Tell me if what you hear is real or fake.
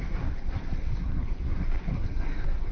fake